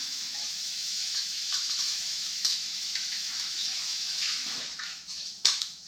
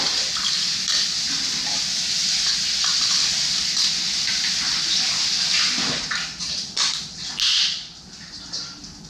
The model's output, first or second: first